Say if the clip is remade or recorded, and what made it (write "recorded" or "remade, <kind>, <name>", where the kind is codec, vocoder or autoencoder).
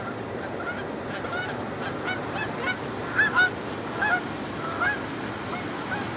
recorded